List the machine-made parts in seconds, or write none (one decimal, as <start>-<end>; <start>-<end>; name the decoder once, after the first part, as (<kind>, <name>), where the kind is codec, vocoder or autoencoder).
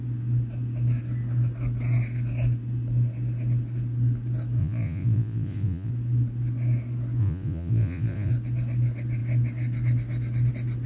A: 4.6-5.9 (vocoder, Vocos); 7.2-8.3